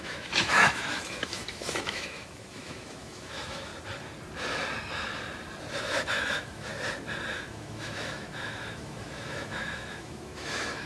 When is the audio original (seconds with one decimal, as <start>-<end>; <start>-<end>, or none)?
3.7-5.8; 6.7-7.3